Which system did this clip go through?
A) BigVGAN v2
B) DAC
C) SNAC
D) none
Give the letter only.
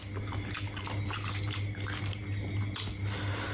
D